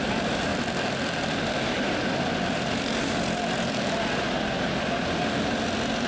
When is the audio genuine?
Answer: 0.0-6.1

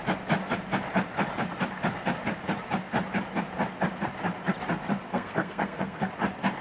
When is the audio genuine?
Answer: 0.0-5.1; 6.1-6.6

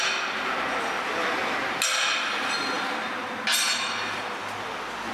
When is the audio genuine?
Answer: 0.0-5.1

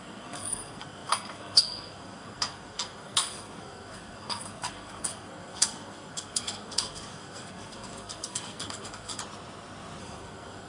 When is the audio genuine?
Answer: 9.2-10.0

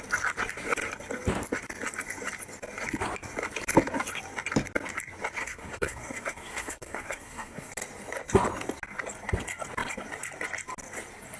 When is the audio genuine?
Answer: 0.0-5.4; 7.7-11.4

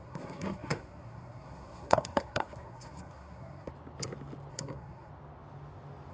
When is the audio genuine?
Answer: 3.7-4.5; 5.1-6.1

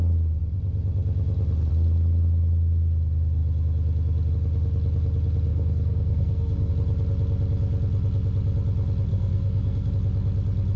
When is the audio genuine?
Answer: 0.0-5.5; 6.7-9.1; 9.9-10.8